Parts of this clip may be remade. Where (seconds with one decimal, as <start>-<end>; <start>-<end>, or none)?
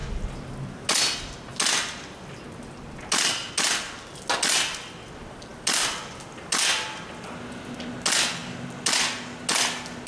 none